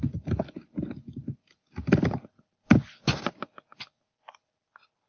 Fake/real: real